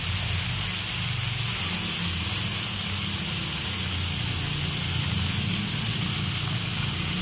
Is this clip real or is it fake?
real